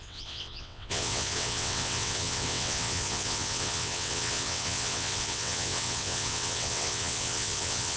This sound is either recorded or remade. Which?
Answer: remade